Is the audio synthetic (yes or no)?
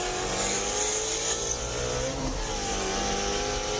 no